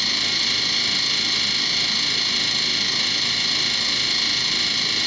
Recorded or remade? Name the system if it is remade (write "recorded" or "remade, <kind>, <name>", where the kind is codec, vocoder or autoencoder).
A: recorded